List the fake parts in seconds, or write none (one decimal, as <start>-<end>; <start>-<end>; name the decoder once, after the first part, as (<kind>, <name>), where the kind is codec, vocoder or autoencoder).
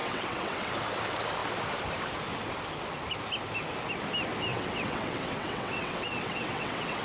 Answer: 0.0-0.7 (vocoder, WaveNeXt); 4.5-7.0